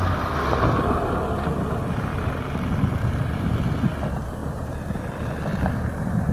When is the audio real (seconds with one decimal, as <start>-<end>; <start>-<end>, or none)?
0.0-6.3